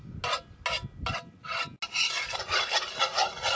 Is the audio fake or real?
real